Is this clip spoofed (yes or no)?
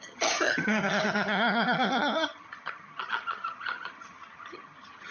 yes